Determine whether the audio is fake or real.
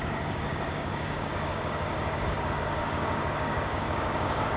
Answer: fake